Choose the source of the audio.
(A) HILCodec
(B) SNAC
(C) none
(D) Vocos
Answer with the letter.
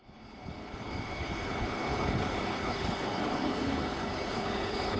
A